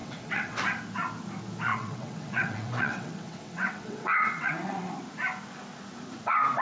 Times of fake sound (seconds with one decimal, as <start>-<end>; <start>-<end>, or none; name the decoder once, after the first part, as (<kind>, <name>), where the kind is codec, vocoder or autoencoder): 0.0-0.6 (vocoder, WaveNeXt); 1.7-4.9